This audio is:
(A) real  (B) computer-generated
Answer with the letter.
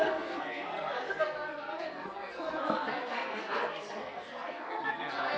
B